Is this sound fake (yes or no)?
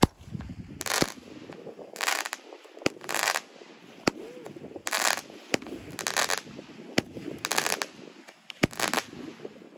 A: no